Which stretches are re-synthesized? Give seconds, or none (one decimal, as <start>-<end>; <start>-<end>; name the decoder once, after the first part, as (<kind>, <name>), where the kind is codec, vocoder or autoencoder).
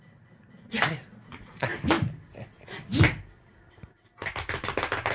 1.3-1.9 (vocoder, BigVGAN v2)